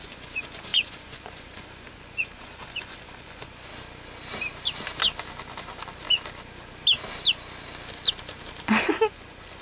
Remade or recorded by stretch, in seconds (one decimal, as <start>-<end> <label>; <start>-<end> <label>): 0.0-3.7 remade; 3.7-8.9 recorded; 8.9-9.6 remade